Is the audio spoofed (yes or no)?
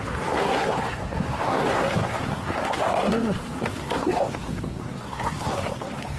yes